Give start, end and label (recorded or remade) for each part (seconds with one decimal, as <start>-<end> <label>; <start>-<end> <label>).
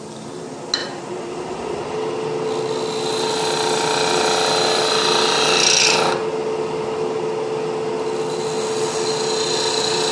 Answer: 0.0-10.1 recorded